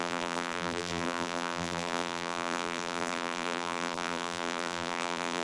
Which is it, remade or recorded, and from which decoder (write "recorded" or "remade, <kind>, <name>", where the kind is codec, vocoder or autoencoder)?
remade, vocoder, BigVGAN v2